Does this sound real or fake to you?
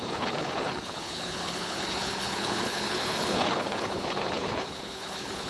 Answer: fake